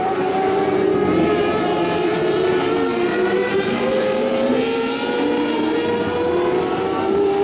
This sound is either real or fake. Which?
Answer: fake